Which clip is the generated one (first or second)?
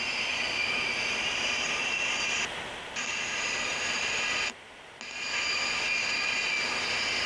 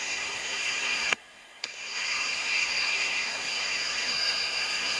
second